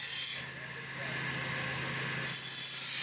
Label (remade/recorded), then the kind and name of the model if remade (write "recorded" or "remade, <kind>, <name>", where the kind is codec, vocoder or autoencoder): recorded